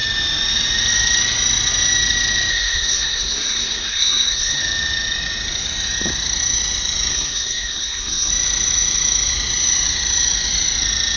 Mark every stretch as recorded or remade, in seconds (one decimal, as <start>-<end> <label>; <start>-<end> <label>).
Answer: 0.0-2.5 recorded; 2.5-4.6 remade; 4.6-7.1 recorded; 7.1-8.3 remade; 8.3-11.2 recorded